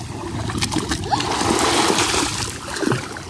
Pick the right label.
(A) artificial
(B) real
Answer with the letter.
B